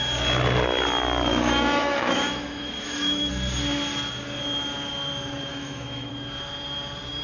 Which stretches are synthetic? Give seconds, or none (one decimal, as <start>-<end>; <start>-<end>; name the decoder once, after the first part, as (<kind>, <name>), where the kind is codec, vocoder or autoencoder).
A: 1.3-3.3 (autoencoder, DAC-VAE); 5.5-6.1

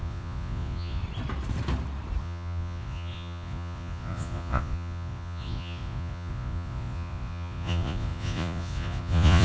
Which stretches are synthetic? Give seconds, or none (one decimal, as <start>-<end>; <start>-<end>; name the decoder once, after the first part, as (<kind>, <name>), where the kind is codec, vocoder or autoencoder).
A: 0.0-1.0 (vocoder, Vocos); 2.2-9.4

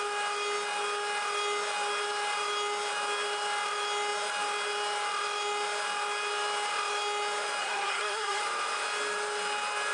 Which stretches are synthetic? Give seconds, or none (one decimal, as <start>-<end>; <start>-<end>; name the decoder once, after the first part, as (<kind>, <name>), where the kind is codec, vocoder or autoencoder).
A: 7.6-8.4 (codec, SNAC)

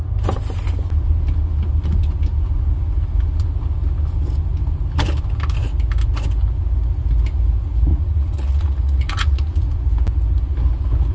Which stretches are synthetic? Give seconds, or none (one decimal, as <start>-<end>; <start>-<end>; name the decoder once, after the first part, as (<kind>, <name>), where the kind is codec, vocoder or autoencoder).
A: 7.9-9.6 (vocoder, Vocos)

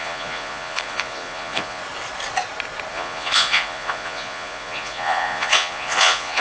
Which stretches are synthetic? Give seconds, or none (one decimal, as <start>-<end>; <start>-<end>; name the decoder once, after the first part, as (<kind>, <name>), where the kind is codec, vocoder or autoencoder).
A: 0.0-1.8 (vocoder, Vocos); 2.9-6.4

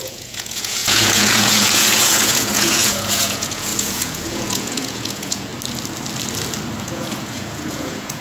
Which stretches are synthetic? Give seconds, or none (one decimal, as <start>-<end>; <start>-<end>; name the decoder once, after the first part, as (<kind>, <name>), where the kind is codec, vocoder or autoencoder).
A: 0.0-5.5 (vocoder, Vocos); 6.8-8.2